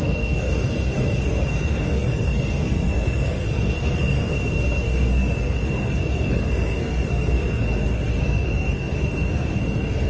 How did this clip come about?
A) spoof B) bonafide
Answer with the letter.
A